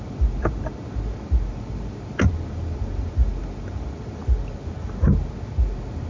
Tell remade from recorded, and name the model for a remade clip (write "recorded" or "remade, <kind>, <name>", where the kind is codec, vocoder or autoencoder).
recorded